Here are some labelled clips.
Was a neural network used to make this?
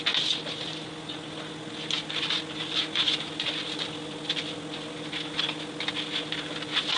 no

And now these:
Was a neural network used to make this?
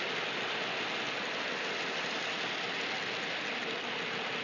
no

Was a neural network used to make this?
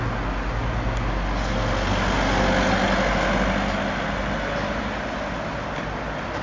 no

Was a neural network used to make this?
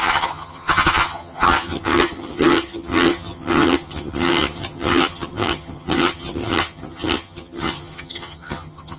yes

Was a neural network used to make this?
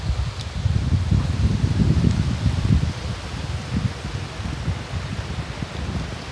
no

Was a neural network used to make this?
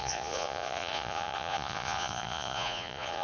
yes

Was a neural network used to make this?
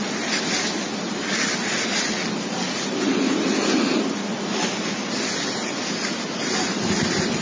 no